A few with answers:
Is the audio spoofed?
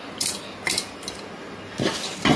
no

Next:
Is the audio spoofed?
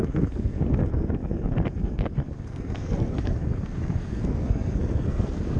yes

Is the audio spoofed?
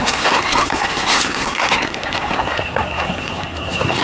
yes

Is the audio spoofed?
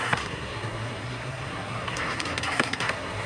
yes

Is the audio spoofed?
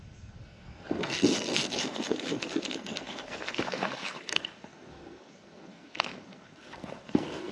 yes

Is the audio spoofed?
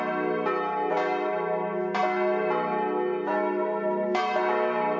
no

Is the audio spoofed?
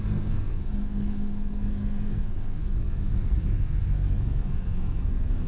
yes